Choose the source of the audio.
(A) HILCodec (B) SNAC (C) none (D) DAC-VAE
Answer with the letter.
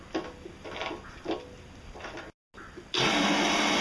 C